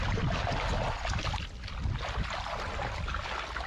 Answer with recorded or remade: recorded